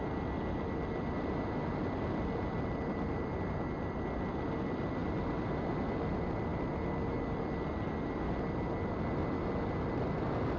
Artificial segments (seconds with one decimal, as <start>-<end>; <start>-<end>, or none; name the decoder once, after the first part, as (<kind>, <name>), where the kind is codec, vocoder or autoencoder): none